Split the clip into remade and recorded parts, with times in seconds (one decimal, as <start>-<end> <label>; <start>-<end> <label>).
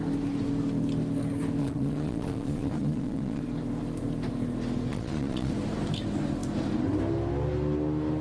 0.0-1.6 recorded; 1.6-3.4 remade; 3.4-4.9 recorded; 4.9-5.5 remade; 5.5-8.2 recorded